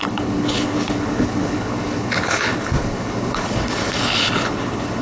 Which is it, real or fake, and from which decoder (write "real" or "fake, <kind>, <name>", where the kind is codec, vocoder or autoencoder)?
fake, codec, HILCodec